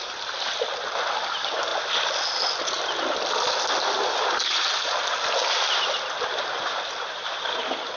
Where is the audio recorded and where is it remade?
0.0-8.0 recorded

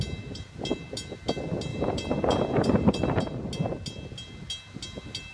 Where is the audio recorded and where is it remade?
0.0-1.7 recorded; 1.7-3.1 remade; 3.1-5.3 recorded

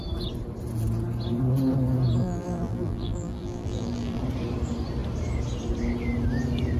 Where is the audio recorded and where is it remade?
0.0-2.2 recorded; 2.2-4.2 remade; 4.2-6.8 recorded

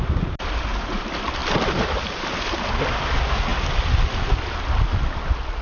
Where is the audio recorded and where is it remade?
0.0-5.6 recorded

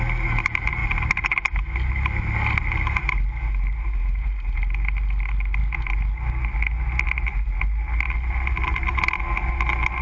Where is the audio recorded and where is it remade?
0.0-10.0 recorded